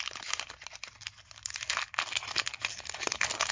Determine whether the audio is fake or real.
real